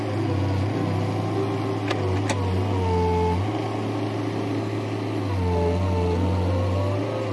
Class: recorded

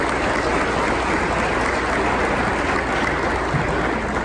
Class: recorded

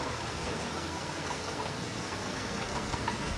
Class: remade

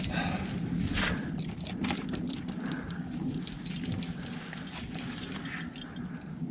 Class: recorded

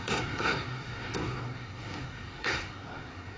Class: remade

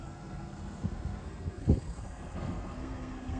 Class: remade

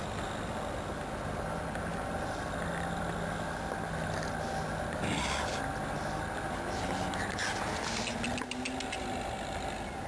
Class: recorded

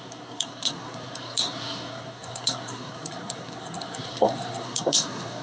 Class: remade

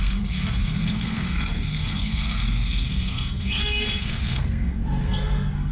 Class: remade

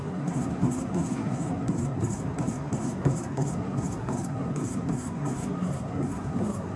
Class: remade